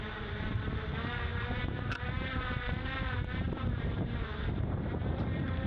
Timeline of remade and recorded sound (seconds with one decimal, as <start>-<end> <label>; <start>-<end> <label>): 0.0-5.7 remade